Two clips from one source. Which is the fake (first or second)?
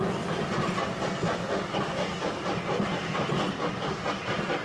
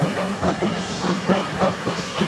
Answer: second